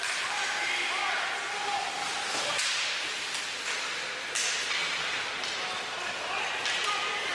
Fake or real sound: real